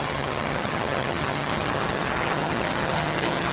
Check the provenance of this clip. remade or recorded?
remade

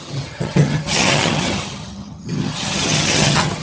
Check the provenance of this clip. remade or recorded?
remade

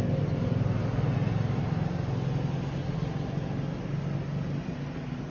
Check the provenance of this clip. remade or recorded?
recorded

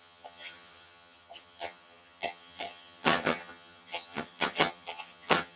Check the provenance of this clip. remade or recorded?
remade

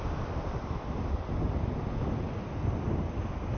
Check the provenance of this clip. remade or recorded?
recorded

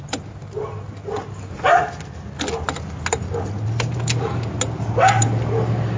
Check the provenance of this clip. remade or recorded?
recorded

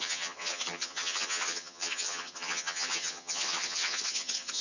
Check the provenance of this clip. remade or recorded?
remade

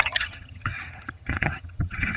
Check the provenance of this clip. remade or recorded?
remade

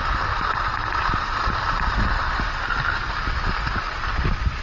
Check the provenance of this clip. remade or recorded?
recorded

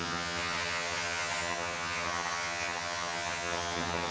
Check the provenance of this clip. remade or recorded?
remade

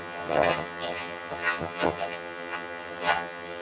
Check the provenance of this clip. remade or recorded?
remade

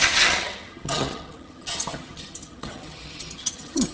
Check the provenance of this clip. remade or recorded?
remade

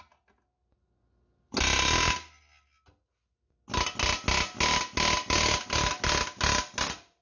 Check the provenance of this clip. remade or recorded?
recorded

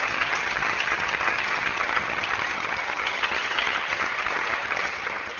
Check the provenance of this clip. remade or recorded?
remade